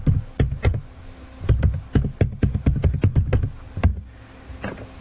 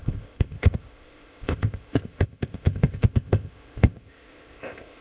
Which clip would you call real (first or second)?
first